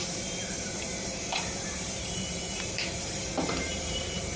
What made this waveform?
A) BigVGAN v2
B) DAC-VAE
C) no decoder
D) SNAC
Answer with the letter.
A